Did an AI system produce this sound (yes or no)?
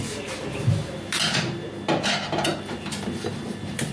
no